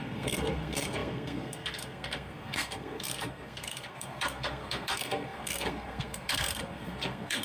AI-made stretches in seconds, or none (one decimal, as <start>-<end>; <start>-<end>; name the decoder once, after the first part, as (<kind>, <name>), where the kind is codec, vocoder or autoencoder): 0.0-7.4 (codec, SNAC)